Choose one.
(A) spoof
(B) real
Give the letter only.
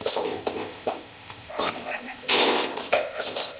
A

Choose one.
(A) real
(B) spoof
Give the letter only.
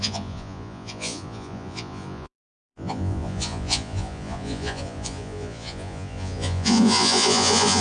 B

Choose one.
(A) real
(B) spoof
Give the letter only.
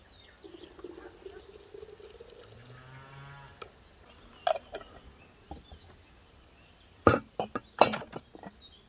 A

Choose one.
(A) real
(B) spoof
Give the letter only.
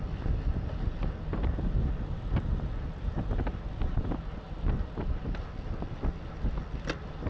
A